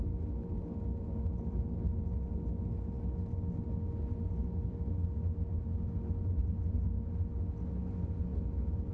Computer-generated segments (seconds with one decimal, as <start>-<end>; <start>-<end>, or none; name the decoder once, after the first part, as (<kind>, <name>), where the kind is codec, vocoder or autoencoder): none